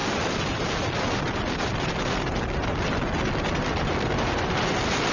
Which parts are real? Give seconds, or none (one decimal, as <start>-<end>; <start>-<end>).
0.0-5.1